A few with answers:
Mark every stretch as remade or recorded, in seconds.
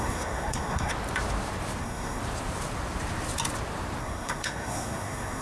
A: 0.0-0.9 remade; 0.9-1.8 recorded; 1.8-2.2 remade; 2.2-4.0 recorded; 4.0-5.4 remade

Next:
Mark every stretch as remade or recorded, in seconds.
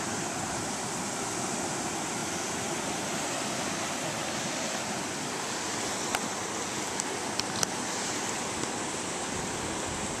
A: 0.0-10.2 recorded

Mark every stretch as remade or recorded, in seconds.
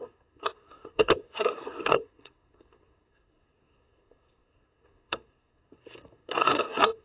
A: 0.0-7.0 remade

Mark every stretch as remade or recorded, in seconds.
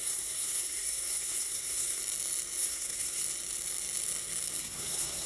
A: 0.0-2.0 remade; 2.0-2.6 recorded; 2.6-3.2 remade; 3.2-4.6 recorded; 4.6-5.3 remade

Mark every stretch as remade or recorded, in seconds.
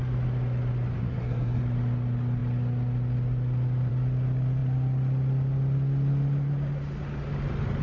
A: 0.0-1.0 recorded; 1.0-1.6 remade; 1.6-7.8 recorded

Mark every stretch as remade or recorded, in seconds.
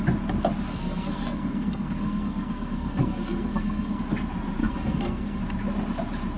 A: 0.0-0.7 recorded; 0.7-4.0 remade; 4.0-4.6 recorded; 4.6-5.4 remade; 5.4-6.4 recorded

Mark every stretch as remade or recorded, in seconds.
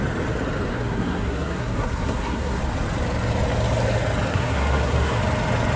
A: 0.0-0.7 recorded; 0.7-2.6 remade; 2.6-4.3 recorded; 4.3-5.2 remade; 5.2-5.8 recorded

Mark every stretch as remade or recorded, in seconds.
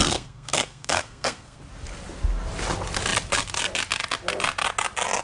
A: 0.0-1.6 remade; 1.6-5.2 recorded